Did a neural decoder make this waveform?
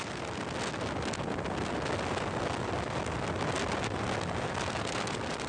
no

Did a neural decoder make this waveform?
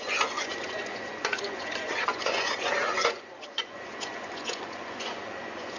yes